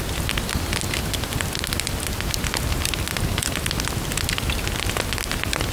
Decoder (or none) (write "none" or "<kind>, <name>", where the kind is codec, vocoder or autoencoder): none